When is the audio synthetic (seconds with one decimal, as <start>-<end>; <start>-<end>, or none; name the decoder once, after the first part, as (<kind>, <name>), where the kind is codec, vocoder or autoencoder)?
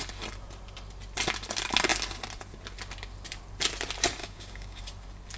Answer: 4.2-4.8 (codec, DAC)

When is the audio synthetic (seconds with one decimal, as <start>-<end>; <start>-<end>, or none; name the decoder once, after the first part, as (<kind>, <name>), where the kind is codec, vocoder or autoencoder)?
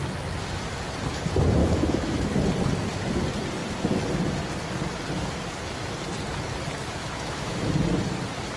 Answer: 1.6-2.3 (autoencoder, DAC-VAE); 7.0-7.7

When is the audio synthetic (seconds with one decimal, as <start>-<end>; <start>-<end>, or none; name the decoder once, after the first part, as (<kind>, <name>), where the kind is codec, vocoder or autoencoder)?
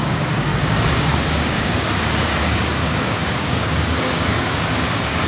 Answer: 0.0-5.3 (codec, DAC)